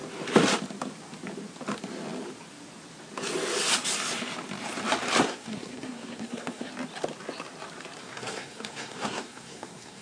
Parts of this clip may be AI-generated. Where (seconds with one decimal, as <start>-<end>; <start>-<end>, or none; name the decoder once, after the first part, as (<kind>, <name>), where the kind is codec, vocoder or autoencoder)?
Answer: 5.2-6.7 (codec, SNAC); 8.0-10.0